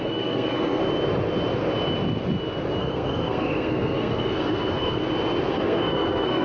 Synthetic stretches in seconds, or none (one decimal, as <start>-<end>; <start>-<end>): 0.0-0.8; 2.8-5.0; 5.5-6.4